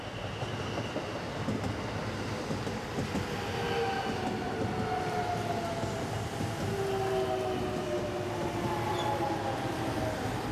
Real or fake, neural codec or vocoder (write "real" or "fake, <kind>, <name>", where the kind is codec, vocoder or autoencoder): real